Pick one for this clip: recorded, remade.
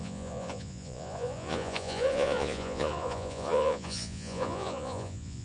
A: remade